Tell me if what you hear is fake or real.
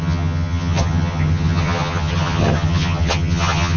fake